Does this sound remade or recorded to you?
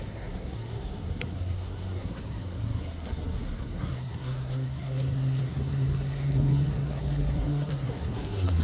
remade